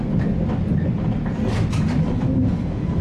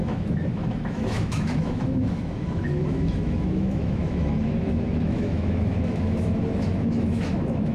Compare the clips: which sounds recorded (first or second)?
first